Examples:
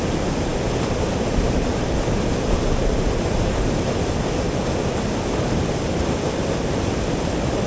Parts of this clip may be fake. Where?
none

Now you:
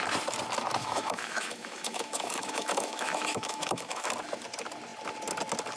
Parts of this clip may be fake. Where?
0.8-4.1 (autoencoder, DAC-VAE)

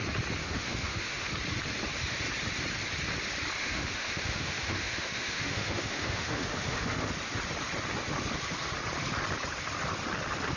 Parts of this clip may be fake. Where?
0.4-1.3 (autoencoder, DAC-VAE); 3.6-7.1

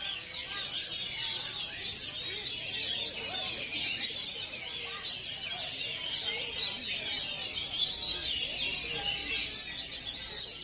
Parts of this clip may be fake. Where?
none